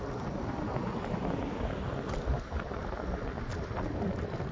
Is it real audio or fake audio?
real